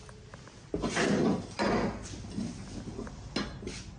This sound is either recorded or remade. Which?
recorded